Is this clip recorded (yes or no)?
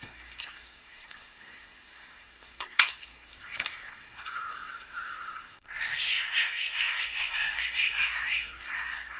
no